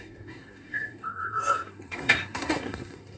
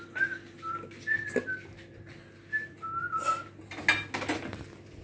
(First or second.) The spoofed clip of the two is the first